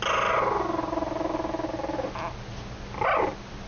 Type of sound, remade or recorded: recorded